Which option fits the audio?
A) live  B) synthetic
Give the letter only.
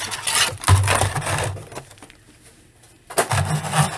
A